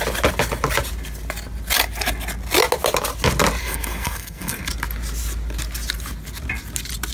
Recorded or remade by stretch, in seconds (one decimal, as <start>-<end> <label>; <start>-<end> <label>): 0.0-3.6 recorded; 3.6-4.7 remade; 4.7-7.1 recorded